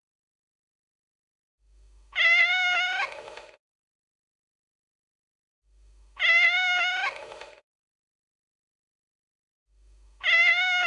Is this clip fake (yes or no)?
yes